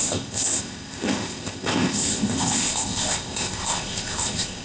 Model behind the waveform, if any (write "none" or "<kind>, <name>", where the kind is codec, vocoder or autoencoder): codec, ZipCodec